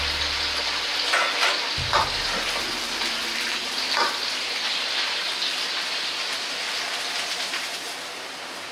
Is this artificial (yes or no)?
no